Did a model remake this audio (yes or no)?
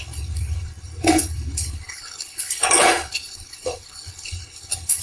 yes